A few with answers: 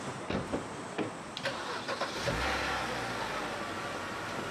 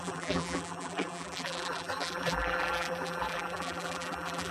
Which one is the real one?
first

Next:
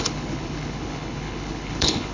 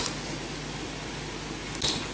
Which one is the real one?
second